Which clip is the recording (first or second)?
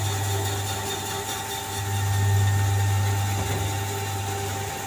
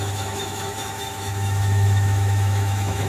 first